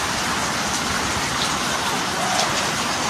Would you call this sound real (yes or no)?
yes